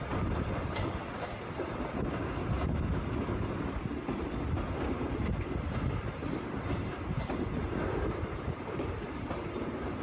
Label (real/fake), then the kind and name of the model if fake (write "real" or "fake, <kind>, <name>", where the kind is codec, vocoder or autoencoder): real